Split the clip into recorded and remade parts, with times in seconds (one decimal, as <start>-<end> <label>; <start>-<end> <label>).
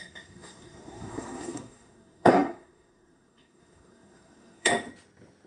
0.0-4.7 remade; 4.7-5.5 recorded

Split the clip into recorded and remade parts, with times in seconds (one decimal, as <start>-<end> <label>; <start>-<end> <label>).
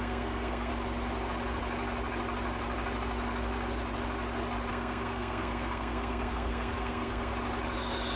0.0-0.7 remade; 0.7-4.7 recorded; 4.7-7.3 remade; 7.3-8.2 recorded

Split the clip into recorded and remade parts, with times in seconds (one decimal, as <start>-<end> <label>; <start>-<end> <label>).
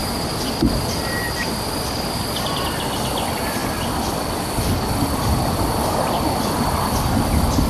0.0-7.7 recorded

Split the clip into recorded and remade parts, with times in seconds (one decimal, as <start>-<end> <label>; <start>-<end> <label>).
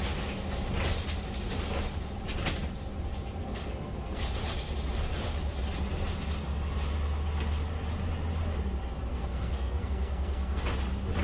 0.0-3.4 recorded; 3.4-4.2 remade; 4.2-9.1 recorded; 9.1-10.6 remade; 10.6-11.2 recorded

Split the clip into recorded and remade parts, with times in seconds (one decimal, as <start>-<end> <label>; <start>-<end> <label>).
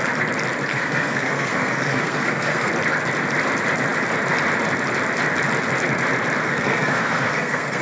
0.0-0.7 recorded; 0.7-2.7 remade; 2.7-6.4 recorded; 6.4-7.8 remade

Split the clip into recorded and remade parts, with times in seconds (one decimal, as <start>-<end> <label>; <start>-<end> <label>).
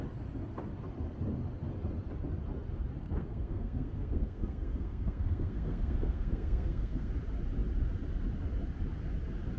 0.0-3.0 recorded; 3.0-7.1 remade; 7.1-9.6 recorded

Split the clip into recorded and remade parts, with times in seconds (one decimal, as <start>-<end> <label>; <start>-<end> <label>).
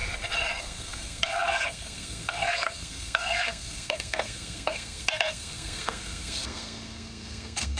0.0-0.6 recorded; 0.6-7.8 remade